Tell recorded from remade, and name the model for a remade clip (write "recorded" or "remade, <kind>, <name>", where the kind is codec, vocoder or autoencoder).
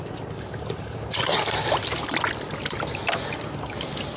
recorded